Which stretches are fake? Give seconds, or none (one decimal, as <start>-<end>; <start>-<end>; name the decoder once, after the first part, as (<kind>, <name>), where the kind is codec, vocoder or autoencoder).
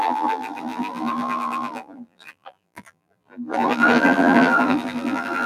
0.0-5.5 (vocoder, BigVGAN v2)